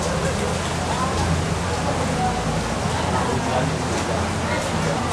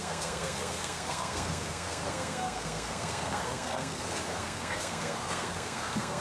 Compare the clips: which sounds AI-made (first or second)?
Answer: second